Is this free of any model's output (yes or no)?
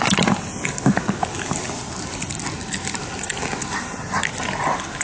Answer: yes